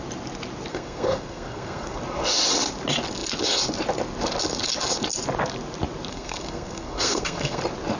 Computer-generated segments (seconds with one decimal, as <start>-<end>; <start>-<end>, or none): 0.7-2.0; 6.1-7.6